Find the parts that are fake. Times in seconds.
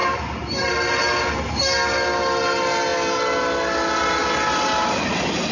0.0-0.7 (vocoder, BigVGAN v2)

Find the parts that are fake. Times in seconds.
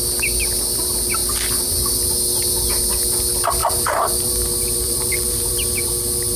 3.6-5.9 (vocoder, BigVGAN v2)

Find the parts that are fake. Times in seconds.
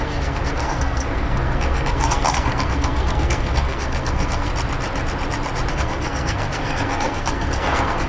0.0-4.5 (codec, SNAC); 5.7-8.1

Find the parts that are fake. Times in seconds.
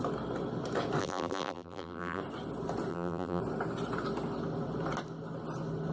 1.0-2.2 (vocoder, BigVGAN v2); 2.9-3.4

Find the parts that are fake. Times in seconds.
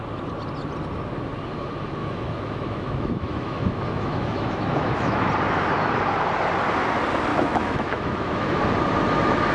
2.0-5.3 (autoencoder, DAC-VAE); 7.3-8.6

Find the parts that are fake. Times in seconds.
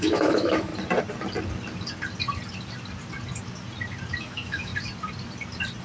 0.0-0.7 (autoencoder, DAC-VAE); 4.2-4.7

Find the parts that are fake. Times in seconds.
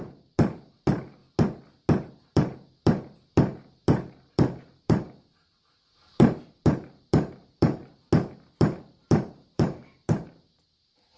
0.0-1.2 (vocoder, BigVGAN v2); 2.2-7.8; 8.6-11.2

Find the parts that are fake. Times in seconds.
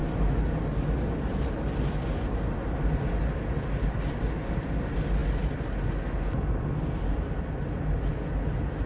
none